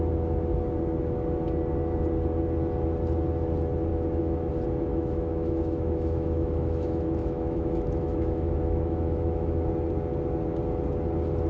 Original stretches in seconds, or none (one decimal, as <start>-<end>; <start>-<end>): 0.0-3.9; 4.5-4.9; 9.7-11.5